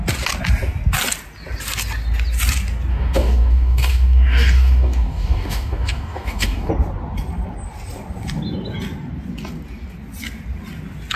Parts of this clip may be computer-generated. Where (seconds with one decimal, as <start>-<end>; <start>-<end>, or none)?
2.9-6.7